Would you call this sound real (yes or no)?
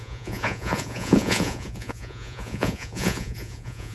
no